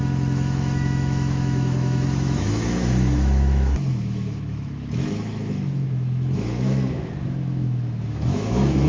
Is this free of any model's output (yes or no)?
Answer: no